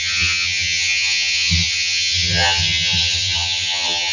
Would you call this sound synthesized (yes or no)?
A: yes